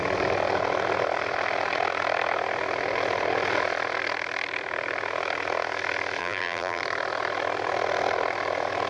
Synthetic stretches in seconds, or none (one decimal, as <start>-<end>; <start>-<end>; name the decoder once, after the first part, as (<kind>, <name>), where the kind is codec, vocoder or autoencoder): 6.2-6.8 (vocoder, BigVGAN v2)